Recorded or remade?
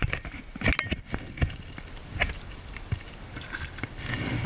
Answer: recorded